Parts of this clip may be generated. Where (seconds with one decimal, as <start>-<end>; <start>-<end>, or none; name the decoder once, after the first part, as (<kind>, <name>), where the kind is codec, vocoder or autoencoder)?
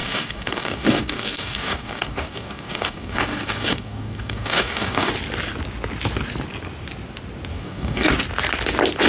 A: 0.0-5.1 (codec, DAC); 7.5-8.1